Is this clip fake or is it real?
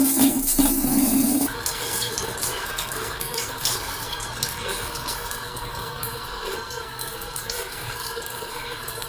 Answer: fake